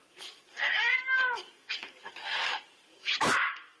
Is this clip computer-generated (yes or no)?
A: yes